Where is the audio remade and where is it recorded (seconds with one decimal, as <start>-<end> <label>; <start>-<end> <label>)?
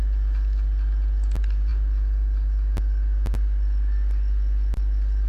0.0-5.3 recorded